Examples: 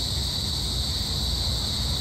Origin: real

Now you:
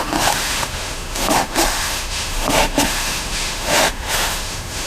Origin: fake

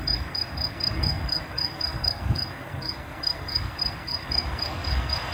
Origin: fake